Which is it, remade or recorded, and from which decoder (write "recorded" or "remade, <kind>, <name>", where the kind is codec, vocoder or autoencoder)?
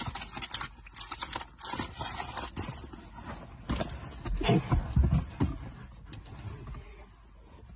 recorded